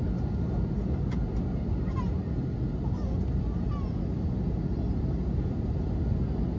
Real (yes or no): yes